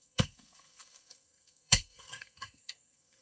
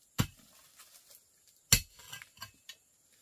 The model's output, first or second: first